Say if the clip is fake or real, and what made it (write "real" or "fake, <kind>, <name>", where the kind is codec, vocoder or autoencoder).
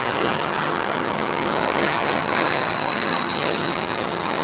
fake, vocoder, HiFi-GAN